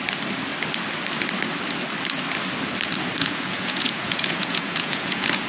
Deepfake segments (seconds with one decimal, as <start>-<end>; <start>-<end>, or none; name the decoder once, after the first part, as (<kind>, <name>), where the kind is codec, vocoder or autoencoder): 3.2-5.5 (vocoder, Vocos)